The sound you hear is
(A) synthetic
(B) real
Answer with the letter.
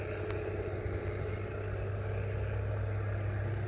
B